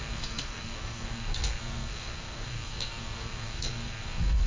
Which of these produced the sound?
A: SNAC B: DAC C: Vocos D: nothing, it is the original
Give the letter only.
A